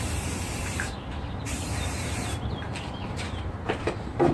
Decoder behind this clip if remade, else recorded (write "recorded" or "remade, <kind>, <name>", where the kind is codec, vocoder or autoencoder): remade, vocoder, BigVGAN v2